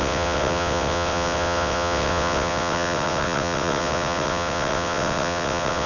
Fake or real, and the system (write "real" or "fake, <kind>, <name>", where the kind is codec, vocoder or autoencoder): fake, vocoder, WaveNeXt